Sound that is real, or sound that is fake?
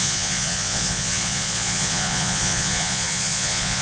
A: fake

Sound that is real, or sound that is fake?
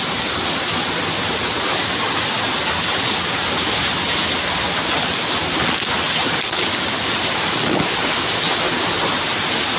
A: real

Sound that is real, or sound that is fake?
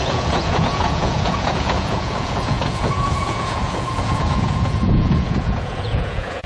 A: fake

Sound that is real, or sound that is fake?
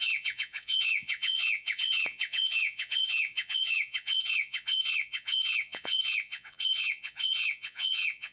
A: fake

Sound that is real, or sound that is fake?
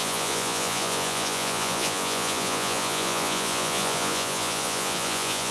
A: fake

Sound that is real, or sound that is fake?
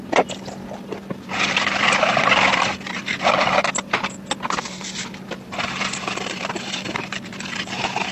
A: real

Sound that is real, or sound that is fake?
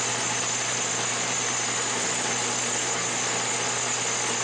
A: real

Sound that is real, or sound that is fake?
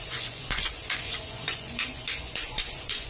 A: fake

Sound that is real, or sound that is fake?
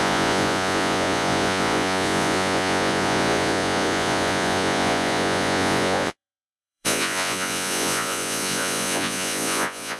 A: fake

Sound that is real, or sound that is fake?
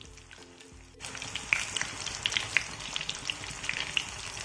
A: real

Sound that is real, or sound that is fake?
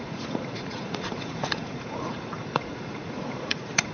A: fake